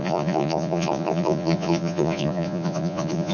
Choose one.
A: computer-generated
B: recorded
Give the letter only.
A